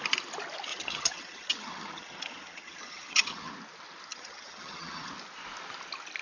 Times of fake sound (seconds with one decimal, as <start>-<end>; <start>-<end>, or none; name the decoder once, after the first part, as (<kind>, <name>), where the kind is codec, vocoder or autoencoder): 0.7-3.5 (vocoder, HiFi-GAN); 4.1-5.1